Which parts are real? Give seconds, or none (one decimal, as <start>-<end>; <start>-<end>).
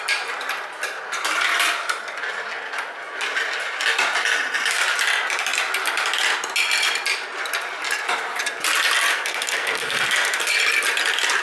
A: 0.0-9.1; 10.5-11.4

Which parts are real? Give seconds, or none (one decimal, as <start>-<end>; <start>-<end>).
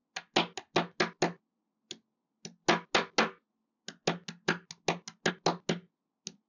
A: 0.0-6.5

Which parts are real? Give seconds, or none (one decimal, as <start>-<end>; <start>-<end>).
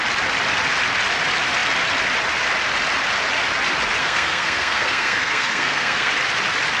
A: 0.0-4.0; 6.1-6.8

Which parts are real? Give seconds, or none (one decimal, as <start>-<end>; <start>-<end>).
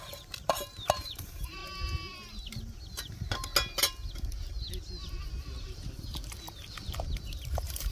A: 1.6-2.9; 3.5-7.3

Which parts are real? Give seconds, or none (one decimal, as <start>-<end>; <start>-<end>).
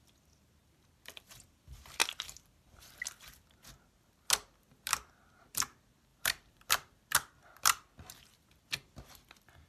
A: 0.0-0.6; 1.4-2.0; 3.0-6.1; 7.0-9.7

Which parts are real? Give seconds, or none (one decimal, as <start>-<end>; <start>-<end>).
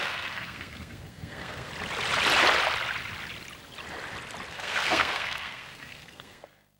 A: 1.7-4.5